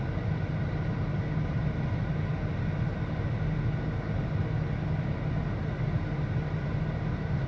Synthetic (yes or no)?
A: no